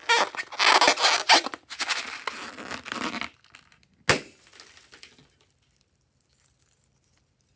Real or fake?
real